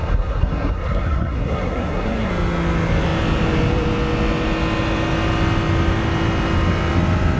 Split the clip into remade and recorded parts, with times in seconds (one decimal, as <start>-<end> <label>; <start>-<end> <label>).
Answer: 0.0-2.3 remade; 2.3-7.4 recorded